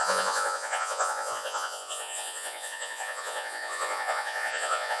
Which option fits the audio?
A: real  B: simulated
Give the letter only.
B